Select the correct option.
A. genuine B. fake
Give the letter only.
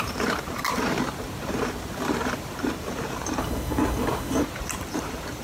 B